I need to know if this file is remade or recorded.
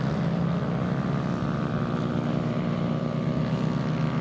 recorded